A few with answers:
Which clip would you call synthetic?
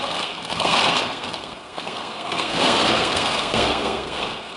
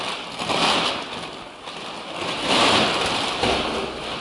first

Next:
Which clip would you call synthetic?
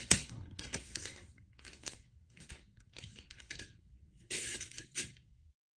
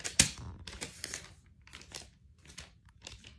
first